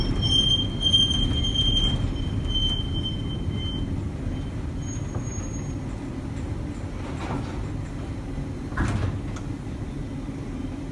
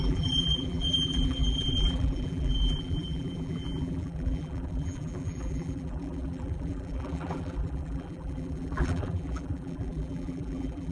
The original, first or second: first